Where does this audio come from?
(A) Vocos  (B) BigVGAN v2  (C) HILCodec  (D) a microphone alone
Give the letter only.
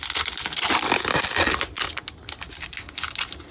D